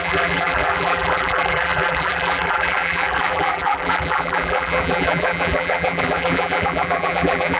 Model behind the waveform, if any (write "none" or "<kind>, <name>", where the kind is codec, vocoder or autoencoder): vocoder, BigVGAN v2